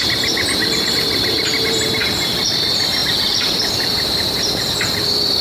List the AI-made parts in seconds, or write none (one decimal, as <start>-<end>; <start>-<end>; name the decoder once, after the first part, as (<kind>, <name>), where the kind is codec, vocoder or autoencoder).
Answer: 0.0-5.4 (vocoder, BigVGAN v2)